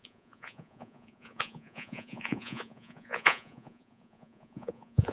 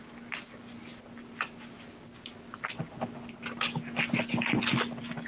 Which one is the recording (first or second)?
second